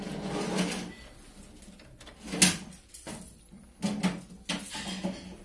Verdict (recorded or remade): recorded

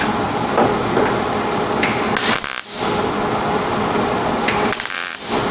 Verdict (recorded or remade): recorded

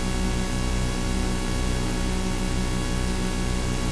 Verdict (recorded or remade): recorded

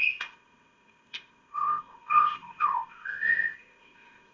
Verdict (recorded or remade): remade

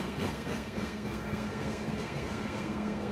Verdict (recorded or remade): remade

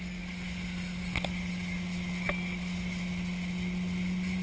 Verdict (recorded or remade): recorded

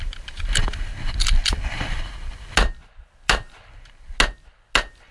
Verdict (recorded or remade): recorded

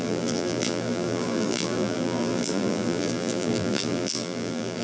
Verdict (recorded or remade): remade